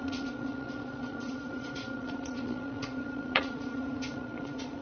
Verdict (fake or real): fake